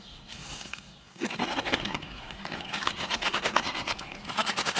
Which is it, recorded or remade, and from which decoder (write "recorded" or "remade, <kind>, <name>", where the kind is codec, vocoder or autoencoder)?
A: remade, codec, SNAC